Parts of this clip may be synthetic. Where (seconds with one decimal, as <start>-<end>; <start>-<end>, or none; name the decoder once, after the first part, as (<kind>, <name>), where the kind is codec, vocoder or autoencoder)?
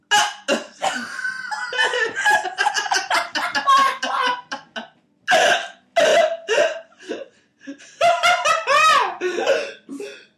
1.9-5.0 (vocoder, BigVGAN v2); 6.1-7.1